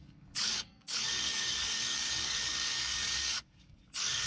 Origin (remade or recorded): remade